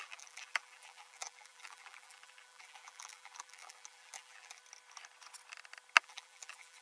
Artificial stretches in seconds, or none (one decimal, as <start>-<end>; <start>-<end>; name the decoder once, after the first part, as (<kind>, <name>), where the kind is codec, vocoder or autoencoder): 0.0-4.6 (vocoder, BigVGAN v2); 6.0-6.8